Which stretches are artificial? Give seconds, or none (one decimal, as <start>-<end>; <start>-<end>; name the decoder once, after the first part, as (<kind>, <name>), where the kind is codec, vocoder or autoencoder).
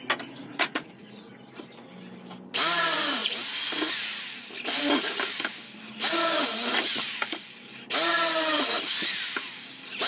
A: 0.4-1.3 (vocoder, Vocos)